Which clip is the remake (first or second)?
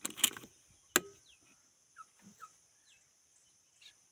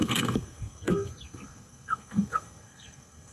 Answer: second